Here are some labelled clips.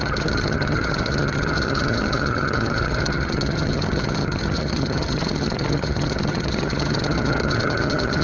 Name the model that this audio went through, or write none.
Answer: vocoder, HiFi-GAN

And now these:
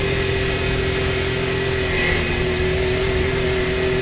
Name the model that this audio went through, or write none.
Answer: none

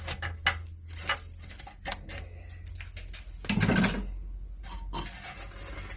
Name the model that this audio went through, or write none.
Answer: none